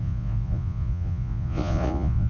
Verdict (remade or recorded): remade